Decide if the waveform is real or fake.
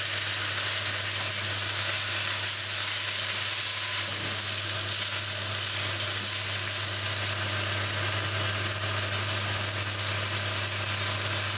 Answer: real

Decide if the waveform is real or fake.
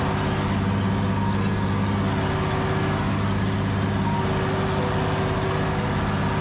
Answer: real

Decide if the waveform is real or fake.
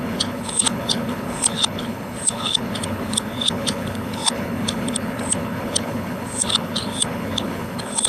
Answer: fake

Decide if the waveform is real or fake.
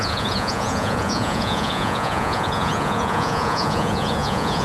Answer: fake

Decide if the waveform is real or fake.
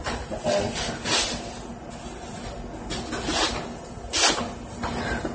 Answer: real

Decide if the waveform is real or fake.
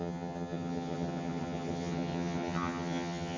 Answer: fake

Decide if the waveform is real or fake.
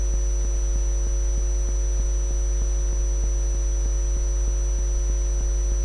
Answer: real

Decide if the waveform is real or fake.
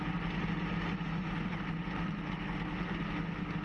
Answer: real